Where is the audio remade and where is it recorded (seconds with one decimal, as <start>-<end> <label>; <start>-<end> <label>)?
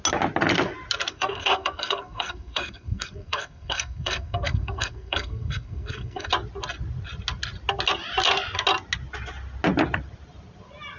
0.0-1.1 recorded; 1.1-6.3 remade; 6.3-11.0 recorded